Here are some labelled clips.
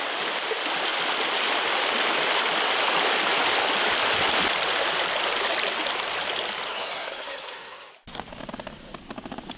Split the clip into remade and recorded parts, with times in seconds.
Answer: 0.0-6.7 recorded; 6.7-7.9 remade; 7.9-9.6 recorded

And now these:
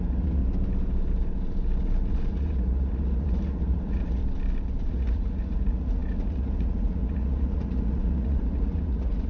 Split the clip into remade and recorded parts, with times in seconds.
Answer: 0.0-0.4 remade; 0.4-2.3 recorded; 2.3-4.2 remade; 4.2-4.9 recorded; 4.9-9.3 remade

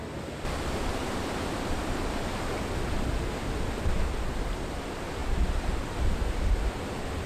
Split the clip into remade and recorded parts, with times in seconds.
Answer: 0.0-7.3 recorded

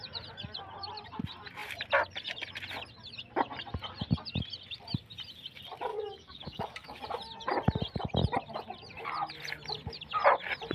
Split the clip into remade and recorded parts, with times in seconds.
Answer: 0.0-5.9 recorded; 5.9-7.0 remade; 7.0-10.7 recorded

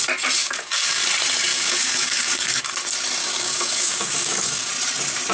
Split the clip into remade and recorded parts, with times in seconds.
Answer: 0.0-0.4 recorded; 0.4-1.0 remade; 1.0-1.5 recorded; 1.5-2.6 remade; 2.6-3.2 recorded; 3.2-4.7 remade; 4.7-5.3 recorded

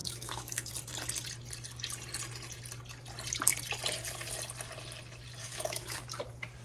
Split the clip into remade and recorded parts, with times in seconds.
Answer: 0.0-0.7 remade; 0.7-5.4 recorded; 5.4-6.0 remade; 6.0-6.6 recorded